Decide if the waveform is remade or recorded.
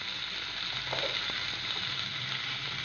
recorded